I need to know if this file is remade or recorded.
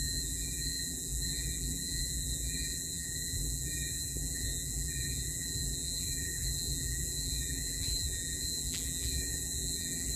remade